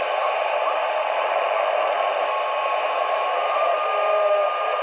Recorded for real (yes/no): yes